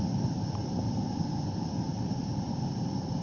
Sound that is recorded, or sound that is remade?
recorded